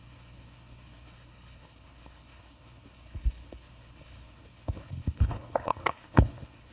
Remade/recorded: remade